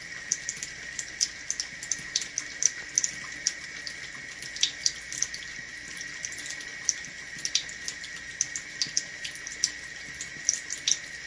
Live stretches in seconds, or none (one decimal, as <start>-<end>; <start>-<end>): 0.0-11.3